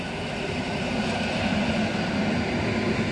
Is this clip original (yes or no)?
yes